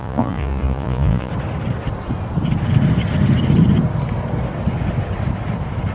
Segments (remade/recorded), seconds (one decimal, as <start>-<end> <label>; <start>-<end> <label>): 0.0-1.3 remade; 1.3-5.9 recorded